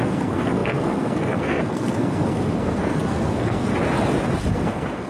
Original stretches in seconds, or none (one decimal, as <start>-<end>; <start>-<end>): 3.7-4.5